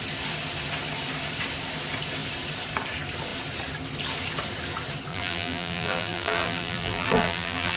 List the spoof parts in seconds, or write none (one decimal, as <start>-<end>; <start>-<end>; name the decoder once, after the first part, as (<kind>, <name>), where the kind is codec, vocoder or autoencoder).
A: 5.1-7.8 (vocoder, BigVGAN v2)